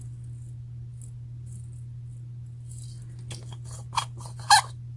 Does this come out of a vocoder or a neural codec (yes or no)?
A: no